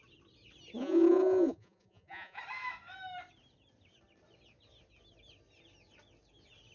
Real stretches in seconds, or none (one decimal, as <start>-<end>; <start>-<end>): 0.0-0.8; 2.4-6.7